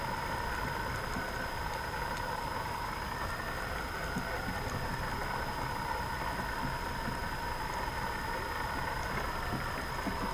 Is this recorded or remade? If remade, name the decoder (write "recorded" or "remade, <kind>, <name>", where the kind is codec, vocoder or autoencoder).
recorded